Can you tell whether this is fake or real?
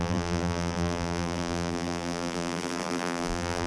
fake